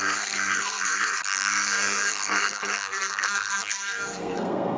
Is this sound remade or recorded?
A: remade